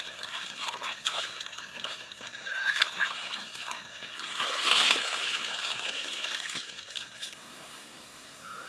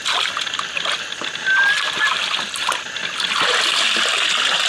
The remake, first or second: first